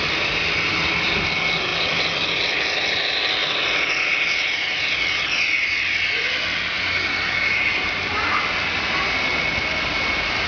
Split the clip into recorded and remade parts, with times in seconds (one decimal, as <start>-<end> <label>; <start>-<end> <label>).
0.0-10.5 recorded